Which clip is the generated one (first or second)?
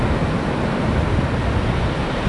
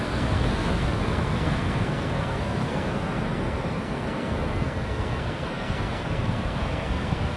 second